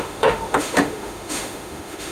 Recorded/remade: remade